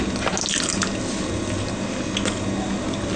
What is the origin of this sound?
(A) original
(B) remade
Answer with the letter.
A